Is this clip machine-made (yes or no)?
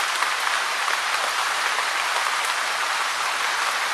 no